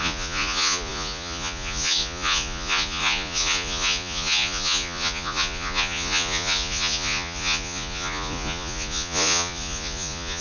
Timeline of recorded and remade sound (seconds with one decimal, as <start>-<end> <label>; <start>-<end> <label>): 0.0-10.4 remade